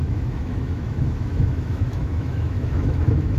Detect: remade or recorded remade